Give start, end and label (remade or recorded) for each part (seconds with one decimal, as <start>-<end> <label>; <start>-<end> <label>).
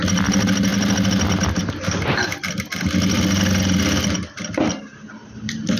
0.0-5.8 recorded